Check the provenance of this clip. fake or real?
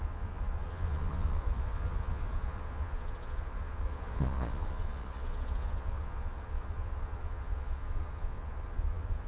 fake